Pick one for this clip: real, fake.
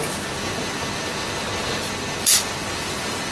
real